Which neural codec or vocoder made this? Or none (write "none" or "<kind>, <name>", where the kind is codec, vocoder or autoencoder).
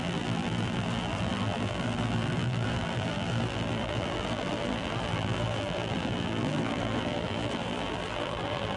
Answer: vocoder, BigVGAN v2